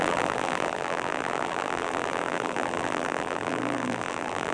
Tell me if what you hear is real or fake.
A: fake